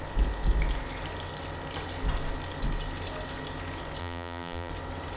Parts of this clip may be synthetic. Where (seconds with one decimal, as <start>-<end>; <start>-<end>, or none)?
4.0-4.7